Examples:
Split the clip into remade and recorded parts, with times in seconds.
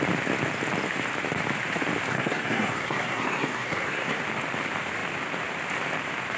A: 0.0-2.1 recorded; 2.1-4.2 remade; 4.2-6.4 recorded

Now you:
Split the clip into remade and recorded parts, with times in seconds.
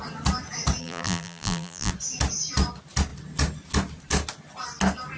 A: 0.0-0.8 recorded; 0.8-1.9 remade; 1.9-5.2 recorded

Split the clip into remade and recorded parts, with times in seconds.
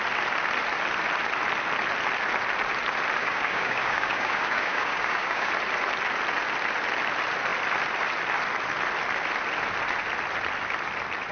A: 0.0-3.2 recorded; 3.2-5.5 remade; 5.5-11.3 recorded